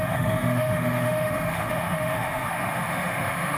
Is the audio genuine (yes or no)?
no